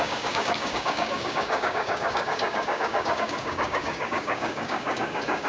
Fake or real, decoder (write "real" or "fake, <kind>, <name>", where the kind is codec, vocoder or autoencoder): fake, codec, DAC